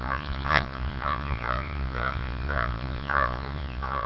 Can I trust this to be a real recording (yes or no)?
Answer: no